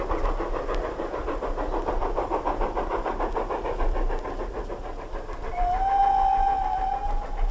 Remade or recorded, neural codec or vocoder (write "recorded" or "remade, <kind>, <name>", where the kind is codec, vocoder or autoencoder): recorded